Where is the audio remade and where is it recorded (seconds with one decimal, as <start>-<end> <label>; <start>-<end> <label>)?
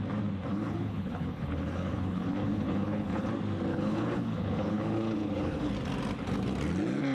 0.0-0.5 recorded; 0.5-3.3 remade; 3.3-3.7 recorded; 3.7-5.7 remade; 5.7-7.1 recorded